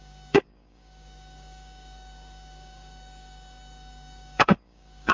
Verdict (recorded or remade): remade